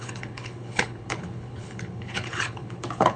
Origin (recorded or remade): remade